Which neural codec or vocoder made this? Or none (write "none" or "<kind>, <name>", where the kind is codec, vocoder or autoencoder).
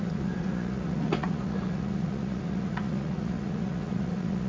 vocoder, Vocos